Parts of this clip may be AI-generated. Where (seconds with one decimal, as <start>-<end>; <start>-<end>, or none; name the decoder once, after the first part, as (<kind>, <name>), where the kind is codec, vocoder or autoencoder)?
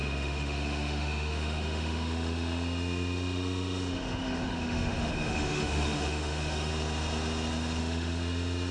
0.0-6.7 (autoencoder, DAC-VAE); 7.8-8.7